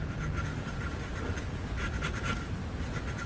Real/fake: real